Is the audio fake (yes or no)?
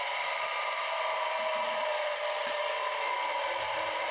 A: no